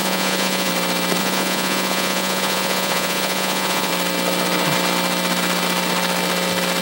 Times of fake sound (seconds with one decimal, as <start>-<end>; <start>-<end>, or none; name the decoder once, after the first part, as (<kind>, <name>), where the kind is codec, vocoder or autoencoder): 0.0-0.7 (vocoder, Vocos); 1.2-3.9